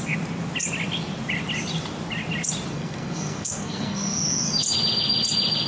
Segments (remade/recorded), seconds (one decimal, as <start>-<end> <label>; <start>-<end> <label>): 0.0-2.7 recorded; 2.7-4.5 remade; 4.5-5.7 recorded